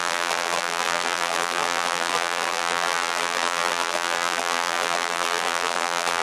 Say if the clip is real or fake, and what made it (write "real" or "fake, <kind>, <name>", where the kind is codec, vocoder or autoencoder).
fake, vocoder, BigVGAN v2